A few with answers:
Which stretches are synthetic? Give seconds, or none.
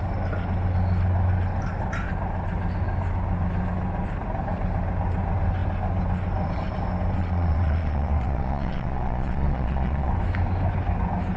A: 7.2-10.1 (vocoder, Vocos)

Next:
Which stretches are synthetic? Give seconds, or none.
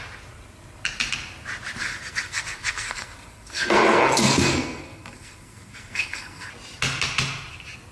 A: 1.8-6.5 (codec, SNAC)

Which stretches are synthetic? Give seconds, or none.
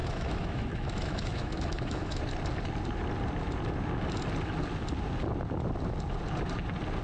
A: 0.0-2.2 (autoencoder, DAC-VAE)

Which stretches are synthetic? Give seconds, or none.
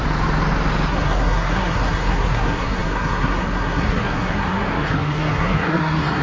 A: 0.9-6.2 (codec, SNAC)